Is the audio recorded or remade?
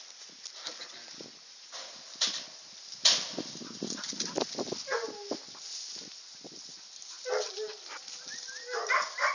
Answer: recorded